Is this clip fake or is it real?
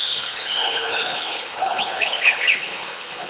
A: fake